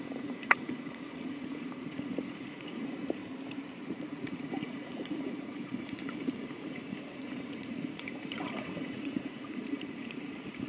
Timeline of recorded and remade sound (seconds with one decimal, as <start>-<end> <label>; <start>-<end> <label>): 0.0-3.2 remade; 3.2-3.8 recorded; 3.8-10.7 remade